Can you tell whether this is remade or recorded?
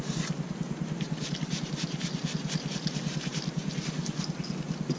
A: recorded